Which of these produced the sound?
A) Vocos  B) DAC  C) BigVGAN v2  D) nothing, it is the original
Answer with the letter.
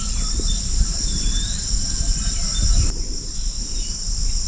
C